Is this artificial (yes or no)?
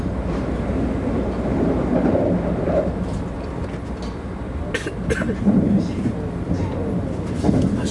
no